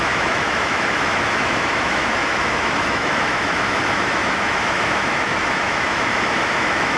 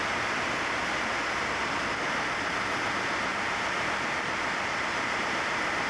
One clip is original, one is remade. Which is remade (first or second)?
first